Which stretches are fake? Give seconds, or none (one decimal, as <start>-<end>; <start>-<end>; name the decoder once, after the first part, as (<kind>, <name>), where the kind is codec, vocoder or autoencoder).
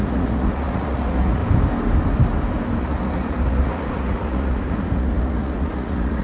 0.0-1.4 (vocoder, Vocos); 2.8-6.2